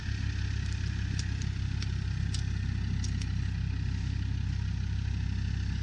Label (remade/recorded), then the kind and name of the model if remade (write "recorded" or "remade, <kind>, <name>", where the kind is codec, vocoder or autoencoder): recorded